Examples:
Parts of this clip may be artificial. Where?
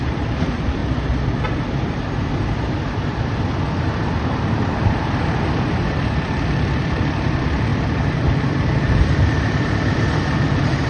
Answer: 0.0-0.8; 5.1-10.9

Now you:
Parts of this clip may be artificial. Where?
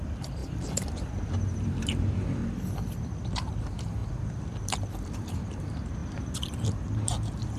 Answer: 0.0-2.4; 3.6-7.6